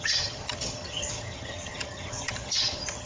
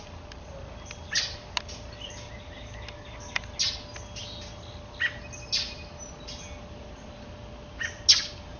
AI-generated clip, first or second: first